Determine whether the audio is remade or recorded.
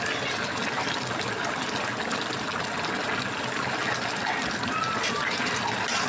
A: recorded